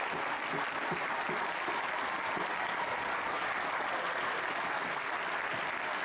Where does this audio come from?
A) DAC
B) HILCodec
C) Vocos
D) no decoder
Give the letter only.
D